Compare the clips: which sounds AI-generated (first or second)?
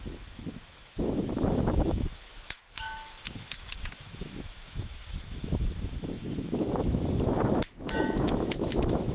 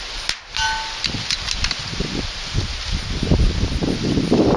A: first